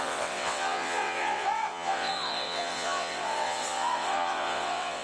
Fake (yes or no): yes